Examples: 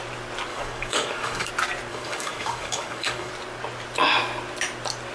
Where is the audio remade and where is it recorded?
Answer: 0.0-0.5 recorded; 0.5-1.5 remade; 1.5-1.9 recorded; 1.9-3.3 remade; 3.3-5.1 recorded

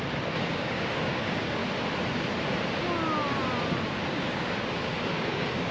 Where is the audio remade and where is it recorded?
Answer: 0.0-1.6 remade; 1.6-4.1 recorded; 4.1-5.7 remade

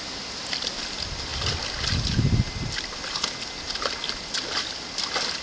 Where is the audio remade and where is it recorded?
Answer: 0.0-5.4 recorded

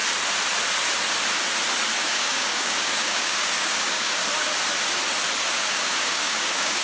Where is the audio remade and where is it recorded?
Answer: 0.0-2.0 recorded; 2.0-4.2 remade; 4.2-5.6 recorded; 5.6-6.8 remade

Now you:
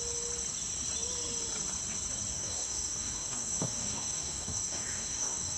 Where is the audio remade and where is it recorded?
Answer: 0.0-2.3 recorded; 2.3-5.6 remade